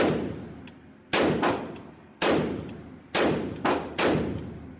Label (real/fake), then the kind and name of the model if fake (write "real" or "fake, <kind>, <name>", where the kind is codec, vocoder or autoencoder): real